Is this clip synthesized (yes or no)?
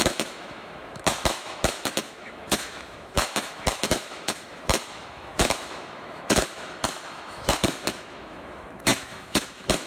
yes